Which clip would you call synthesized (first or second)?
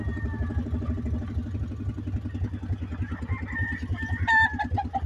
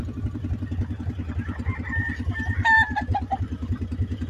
second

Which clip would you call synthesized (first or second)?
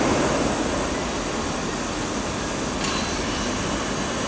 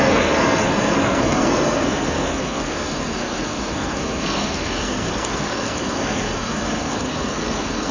second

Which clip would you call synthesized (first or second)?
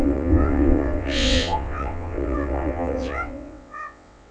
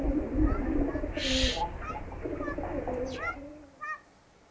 first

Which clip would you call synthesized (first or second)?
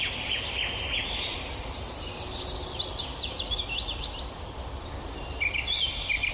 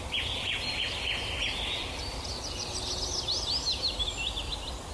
first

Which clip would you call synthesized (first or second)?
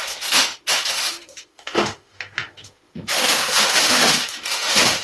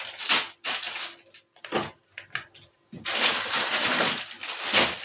first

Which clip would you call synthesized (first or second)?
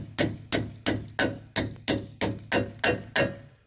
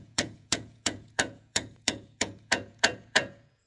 second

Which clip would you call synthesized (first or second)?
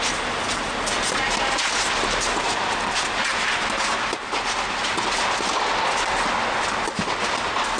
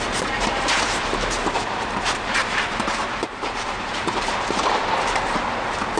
second